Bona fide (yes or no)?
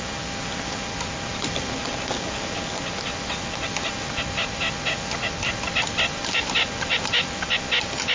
yes